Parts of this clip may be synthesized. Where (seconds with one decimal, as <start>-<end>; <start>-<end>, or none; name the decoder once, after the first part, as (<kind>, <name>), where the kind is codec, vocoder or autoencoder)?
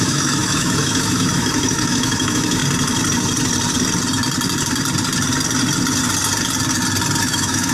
0.0-2.6 (autoencoder, DAC-VAE); 7.2-7.7